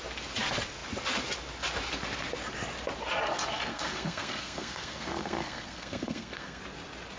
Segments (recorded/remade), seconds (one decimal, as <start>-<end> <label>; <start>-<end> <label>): 0.0-3.7 recorded; 3.7-6.6 remade; 6.6-7.2 recorded